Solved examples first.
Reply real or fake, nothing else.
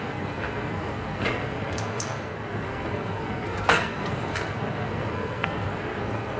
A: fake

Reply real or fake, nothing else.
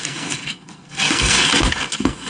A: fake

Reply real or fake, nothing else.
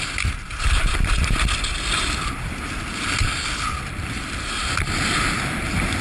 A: real